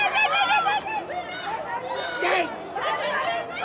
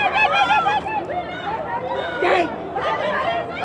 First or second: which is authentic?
first